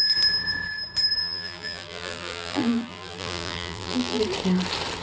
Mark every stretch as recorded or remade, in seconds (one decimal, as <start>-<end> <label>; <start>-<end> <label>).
0.0-1.2 recorded; 1.2-4.2 remade; 4.2-5.0 recorded